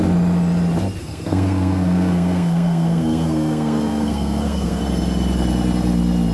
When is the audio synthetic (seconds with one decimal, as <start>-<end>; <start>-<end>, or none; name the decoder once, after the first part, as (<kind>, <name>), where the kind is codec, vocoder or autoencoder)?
1.0-4.8 (codec, SNAC)